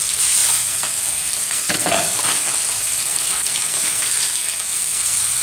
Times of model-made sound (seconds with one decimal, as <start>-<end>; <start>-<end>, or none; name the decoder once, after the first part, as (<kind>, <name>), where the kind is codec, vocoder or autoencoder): 0.0-5.4 (codec, SNAC)